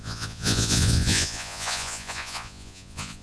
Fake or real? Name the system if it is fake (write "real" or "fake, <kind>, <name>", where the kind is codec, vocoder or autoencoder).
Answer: fake, vocoder, Vocos